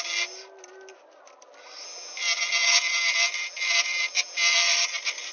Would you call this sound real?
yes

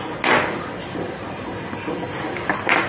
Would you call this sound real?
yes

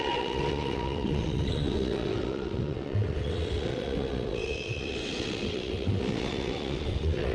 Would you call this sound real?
no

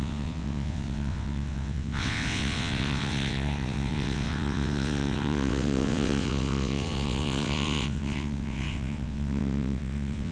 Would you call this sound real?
no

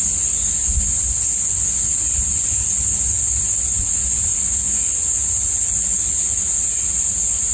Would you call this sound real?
yes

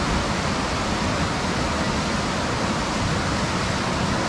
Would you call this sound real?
yes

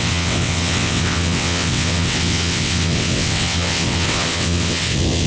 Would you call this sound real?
no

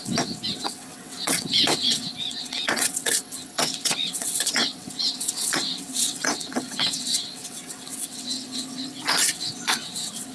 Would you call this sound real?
no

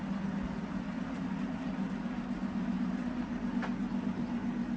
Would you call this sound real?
yes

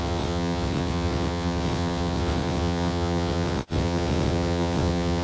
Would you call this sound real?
no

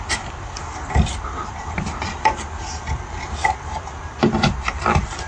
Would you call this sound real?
yes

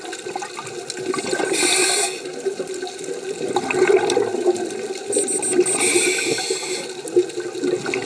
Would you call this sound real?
yes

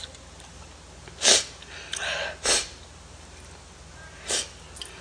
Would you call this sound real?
yes